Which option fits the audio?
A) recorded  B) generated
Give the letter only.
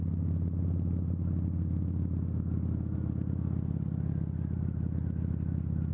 A